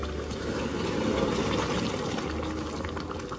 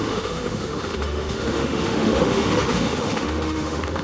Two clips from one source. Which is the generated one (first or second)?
second